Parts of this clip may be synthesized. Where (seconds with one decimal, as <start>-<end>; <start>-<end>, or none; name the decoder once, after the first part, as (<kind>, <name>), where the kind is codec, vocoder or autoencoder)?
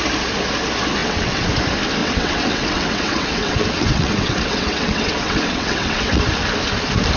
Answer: 1.0-1.5 (vocoder, WaveNeXt); 2.0-6.2